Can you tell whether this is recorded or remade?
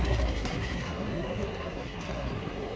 remade